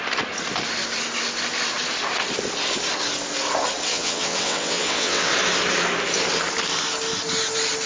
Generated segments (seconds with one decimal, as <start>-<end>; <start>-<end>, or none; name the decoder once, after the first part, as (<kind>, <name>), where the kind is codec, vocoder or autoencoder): 3.9-5.3 (vocoder, WaveNeXt)